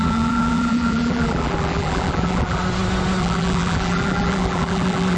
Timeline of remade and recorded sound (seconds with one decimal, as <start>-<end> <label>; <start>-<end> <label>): 0.0-2.6 remade; 2.6-3.2 recorded; 3.2-5.2 remade